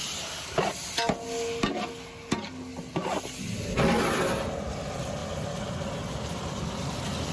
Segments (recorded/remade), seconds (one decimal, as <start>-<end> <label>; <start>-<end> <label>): 0.0-7.3 recorded